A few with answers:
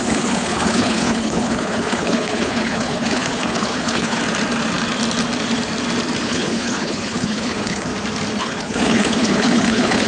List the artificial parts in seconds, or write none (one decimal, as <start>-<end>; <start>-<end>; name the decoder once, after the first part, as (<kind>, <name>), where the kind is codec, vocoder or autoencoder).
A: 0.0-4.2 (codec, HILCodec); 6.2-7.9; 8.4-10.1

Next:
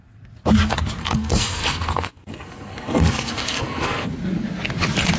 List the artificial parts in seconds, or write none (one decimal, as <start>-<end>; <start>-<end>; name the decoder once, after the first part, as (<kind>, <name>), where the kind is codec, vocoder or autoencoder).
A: 1.0-4.1 (codec, SNAC)

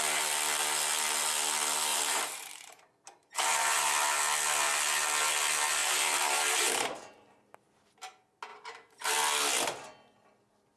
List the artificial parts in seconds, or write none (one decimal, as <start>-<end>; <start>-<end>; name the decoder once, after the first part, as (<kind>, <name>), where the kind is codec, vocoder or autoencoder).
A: 1.9-3.9 (vocoder, BigVGAN v2); 5.8-7.7; 8.5-9.1